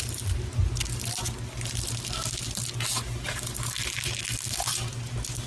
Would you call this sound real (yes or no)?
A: yes